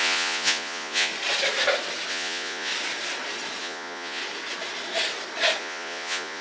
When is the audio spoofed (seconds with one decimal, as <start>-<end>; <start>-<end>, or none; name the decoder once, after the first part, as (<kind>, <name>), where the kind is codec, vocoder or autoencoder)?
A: 0.0-1.1 (vocoder, Vocos); 2.1-2.7; 3.6-4.2; 5.6-6.4